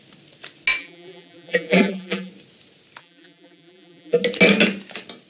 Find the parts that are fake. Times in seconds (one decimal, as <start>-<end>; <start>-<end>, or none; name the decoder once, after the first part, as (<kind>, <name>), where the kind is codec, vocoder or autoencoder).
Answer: 0.8-2.3 (vocoder, BigVGAN v2); 3.0-4.2